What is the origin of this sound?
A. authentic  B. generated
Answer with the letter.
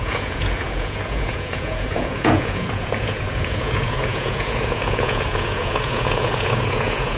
B